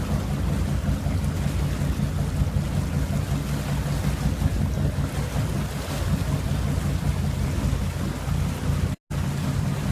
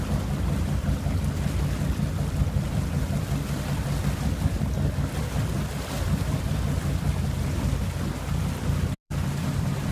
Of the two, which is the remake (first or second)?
second